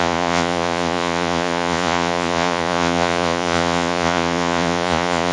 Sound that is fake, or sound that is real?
fake